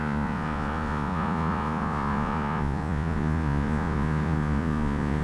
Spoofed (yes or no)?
yes